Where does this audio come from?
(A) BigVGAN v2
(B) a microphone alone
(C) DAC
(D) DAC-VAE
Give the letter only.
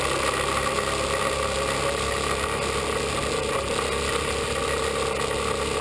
B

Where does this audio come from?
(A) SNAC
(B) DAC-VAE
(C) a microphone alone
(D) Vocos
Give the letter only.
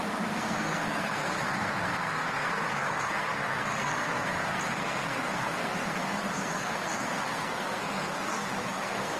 A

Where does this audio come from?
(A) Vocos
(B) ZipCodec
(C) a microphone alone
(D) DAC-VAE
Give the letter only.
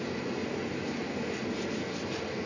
C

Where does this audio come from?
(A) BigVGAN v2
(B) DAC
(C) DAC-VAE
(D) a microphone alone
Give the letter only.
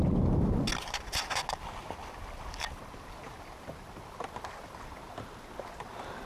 D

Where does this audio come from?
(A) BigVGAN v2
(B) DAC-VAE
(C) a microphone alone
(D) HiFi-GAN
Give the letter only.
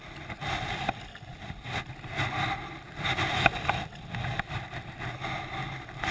C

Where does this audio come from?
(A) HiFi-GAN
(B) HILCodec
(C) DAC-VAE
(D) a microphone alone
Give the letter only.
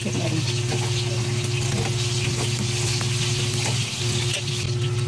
D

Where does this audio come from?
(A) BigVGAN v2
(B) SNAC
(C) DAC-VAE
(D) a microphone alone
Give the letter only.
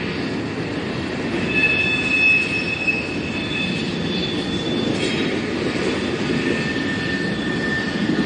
D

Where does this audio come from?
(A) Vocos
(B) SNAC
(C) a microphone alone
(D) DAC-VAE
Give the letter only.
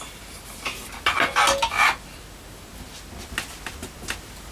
C